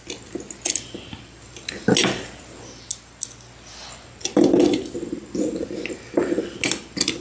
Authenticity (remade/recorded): recorded